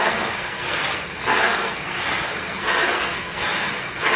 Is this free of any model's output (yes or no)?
no